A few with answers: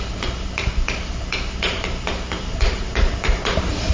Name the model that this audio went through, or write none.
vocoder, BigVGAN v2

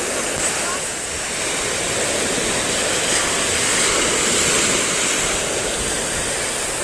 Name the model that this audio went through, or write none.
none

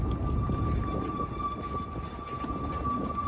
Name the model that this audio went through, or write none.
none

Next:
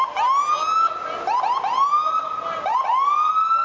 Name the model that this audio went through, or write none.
none